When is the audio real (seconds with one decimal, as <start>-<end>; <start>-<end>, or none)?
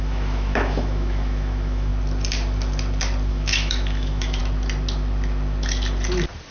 1.9-3.3; 4.4-6.5